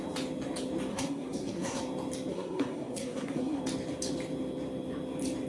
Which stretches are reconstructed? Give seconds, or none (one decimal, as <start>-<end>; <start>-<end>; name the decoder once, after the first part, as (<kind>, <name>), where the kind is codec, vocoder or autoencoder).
0.9-1.8 (codec, SNAC); 2.3-3.6